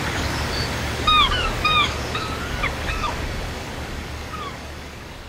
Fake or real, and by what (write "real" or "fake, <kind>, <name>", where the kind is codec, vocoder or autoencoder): fake, codec, DAC